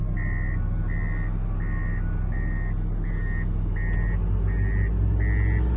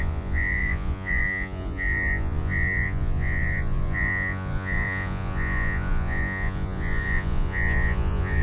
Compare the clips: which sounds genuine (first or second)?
first